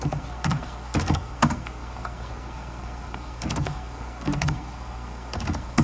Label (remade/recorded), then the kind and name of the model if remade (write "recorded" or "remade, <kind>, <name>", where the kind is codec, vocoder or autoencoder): remade, codec, SNAC